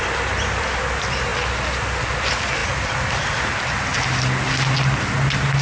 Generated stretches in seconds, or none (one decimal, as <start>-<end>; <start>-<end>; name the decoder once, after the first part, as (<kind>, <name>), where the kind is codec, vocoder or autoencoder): 0.0-1.3 (vocoder, BigVGAN v2); 1.8-3.9